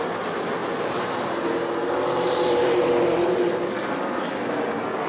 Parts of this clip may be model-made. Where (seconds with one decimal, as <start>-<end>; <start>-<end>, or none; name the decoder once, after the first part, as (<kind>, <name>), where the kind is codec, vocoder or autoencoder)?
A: 0.6-3.5 (vocoder, BigVGAN v2)